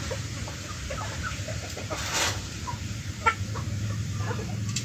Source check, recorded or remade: remade